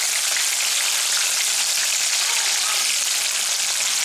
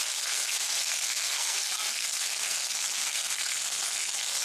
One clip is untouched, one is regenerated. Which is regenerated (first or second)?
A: second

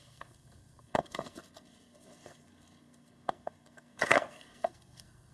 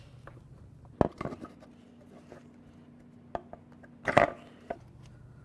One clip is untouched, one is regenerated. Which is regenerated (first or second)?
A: first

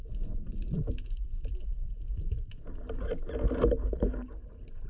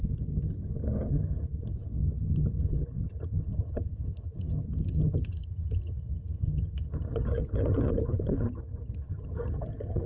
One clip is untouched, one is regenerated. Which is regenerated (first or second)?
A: second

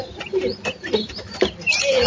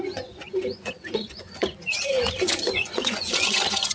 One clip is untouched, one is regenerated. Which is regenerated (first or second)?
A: second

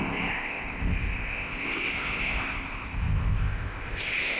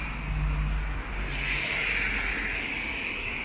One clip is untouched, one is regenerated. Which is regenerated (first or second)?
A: first